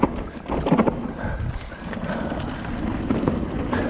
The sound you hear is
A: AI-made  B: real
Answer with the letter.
B